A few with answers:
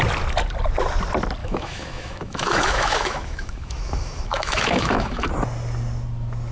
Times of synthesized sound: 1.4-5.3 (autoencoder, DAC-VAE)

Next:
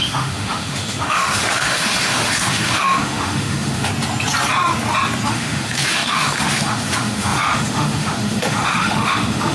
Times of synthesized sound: 0.0-3.9 (autoencoder, DAC-VAE); 5.3-9.5

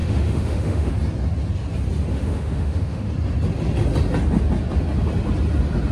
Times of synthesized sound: 0.0-0.9 (autoencoder, DAC-VAE); 2.1-3.1

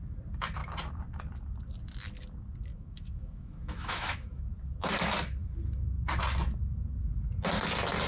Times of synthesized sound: 2.7-4.4 (autoencoder, DAC-VAE)

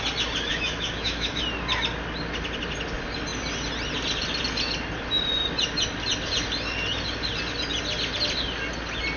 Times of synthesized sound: 0.5-1.4 (autoencoder, DAC-VAE)

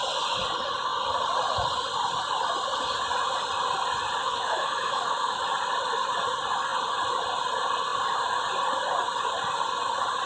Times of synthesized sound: 4.2-5.4 (autoencoder, DAC-VAE)

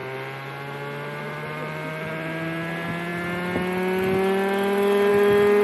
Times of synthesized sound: none

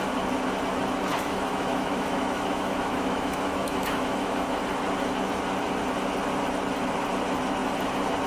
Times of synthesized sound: 1.1-4.6 (autoencoder, DAC-VAE)